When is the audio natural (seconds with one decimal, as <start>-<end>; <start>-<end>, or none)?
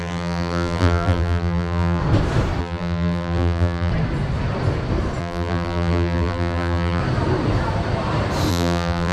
2.0-2.6; 3.9-5.2; 7.0-8.5